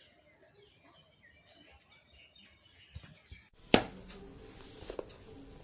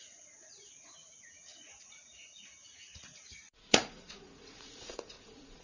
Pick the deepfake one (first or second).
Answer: second